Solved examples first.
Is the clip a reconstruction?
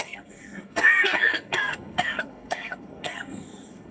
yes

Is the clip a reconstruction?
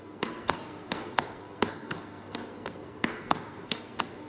yes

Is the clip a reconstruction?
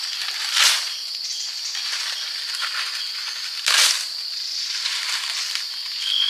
no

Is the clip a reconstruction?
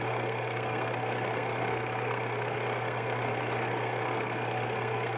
yes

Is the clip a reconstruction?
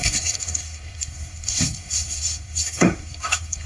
yes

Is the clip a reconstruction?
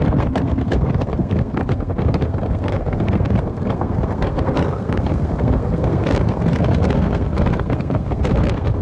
yes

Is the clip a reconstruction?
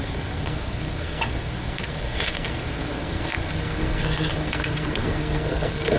yes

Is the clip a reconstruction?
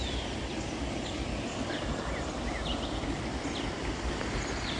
no